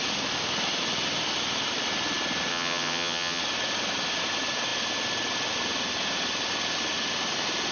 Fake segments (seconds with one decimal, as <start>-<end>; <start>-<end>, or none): 2.5-3.4